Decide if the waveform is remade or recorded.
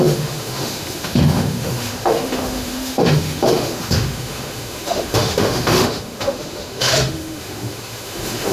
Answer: remade